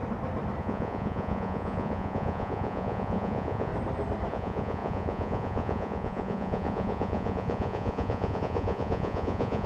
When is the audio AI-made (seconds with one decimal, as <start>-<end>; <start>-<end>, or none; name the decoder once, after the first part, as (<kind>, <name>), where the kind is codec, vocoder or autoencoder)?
0.6-3.7 (vocoder, Vocos); 4.3-9.7